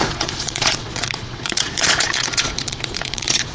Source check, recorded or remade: remade